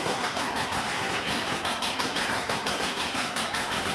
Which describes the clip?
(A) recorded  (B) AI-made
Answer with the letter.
B